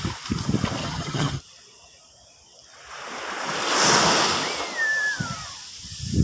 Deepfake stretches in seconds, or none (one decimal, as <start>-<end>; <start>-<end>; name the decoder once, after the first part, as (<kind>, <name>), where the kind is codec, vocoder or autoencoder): 0.8-1.4 (vocoder, HiFi-GAN)